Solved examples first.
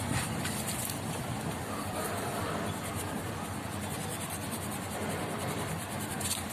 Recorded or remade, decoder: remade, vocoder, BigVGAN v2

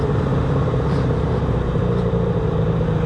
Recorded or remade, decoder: remade, vocoder, BigVGAN v2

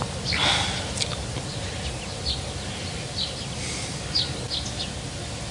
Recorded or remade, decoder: recorded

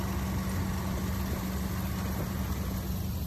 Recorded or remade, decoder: recorded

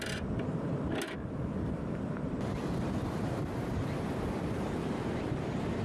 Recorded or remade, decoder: recorded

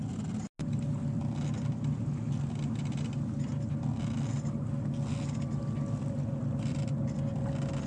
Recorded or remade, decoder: recorded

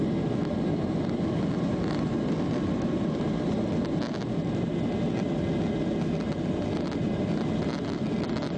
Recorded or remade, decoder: recorded